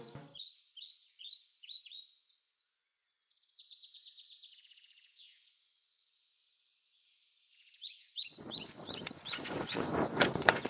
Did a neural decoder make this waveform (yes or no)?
yes